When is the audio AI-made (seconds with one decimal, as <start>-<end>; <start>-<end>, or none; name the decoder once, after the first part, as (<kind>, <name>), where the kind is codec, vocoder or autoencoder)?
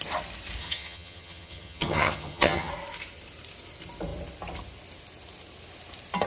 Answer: 0.6-2.7 (vocoder, HiFi-GAN)